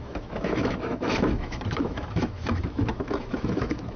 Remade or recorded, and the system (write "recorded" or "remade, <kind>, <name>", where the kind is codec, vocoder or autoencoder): remade, autoencoder, DAC-VAE